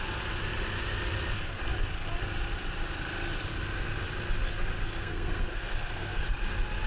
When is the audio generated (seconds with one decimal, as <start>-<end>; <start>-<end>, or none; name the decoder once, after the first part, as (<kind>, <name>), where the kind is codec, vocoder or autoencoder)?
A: 5.0-6.4 (codec, SNAC)

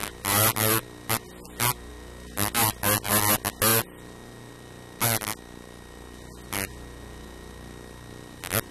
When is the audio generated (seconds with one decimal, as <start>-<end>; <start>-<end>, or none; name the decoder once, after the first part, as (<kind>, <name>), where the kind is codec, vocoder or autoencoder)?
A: none